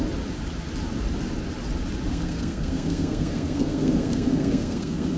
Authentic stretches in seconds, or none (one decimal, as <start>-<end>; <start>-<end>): 0.0-2.1